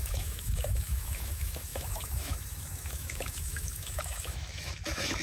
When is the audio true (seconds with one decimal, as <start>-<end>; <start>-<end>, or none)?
none